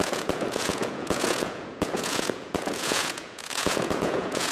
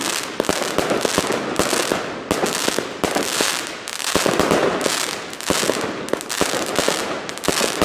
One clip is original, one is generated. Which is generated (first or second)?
first